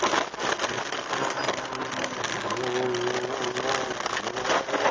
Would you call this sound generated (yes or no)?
no